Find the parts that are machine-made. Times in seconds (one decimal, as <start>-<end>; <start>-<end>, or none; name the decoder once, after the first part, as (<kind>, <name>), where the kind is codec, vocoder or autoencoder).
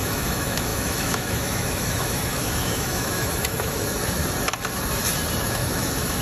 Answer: 0.0-4.2 (autoencoder, DAC-VAE); 5.4-6.2